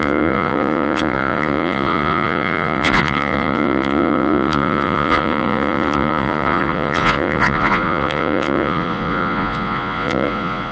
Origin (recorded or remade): remade